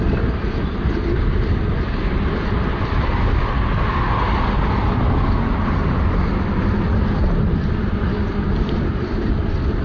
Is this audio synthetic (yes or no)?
no